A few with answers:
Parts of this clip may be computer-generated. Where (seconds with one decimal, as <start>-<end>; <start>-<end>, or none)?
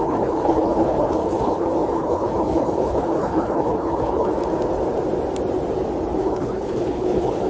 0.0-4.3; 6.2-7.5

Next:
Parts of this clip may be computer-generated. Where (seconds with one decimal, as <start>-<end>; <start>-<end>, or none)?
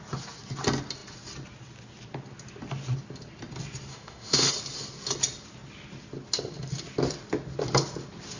3.9-4.5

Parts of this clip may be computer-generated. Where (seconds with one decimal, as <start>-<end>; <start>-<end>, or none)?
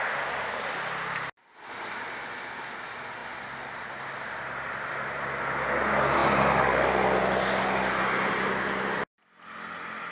none